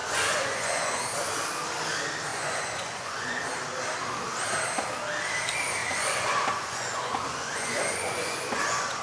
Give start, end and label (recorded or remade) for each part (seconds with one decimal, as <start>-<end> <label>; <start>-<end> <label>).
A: 0.0-1.0 remade; 1.0-2.3 recorded; 2.3-3.4 remade; 3.4-5.8 recorded; 5.8-9.0 remade